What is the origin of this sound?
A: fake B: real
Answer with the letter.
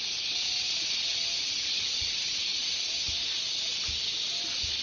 B